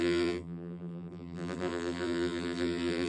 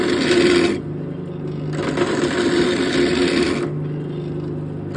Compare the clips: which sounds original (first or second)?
second